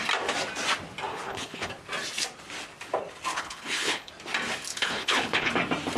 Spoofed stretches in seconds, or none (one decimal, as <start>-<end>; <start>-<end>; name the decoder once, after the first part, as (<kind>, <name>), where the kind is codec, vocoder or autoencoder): 1.1-1.7 (codec, HILCodec); 3.3-4.1; 4.7-5.5